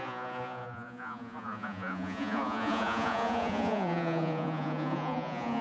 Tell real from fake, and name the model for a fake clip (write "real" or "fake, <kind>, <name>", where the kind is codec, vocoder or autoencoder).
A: fake, vocoder, Vocos